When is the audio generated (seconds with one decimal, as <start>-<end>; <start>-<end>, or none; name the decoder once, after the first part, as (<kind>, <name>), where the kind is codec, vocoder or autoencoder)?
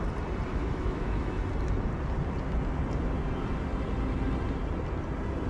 0.5-1.4 (autoencoder, DAC-VAE)